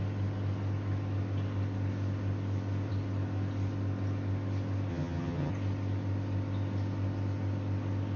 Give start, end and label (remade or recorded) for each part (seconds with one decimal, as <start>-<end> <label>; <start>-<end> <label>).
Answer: 0.0-4.9 recorded; 4.9-5.5 remade; 5.5-8.2 recorded